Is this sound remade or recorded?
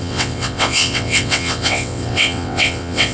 remade